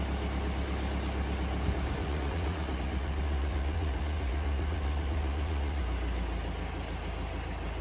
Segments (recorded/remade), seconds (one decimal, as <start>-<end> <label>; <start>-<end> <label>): 0.0-2.0 recorded; 2.0-5.8 remade; 5.8-7.8 recorded